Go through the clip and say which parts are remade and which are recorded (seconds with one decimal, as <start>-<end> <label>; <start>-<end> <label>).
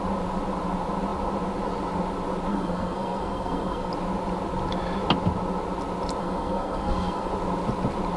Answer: 0.0-2.5 recorded; 2.5-3.9 remade; 3.9-6.2 recorded; 6.2-7.3 remade; 7.3-8.2 recorded